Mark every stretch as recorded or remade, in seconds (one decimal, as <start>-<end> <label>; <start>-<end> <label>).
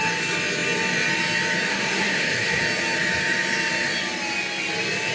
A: 0.0-1.7 recorded; 1.7-2.6 remade; 2.6-5.1 recorded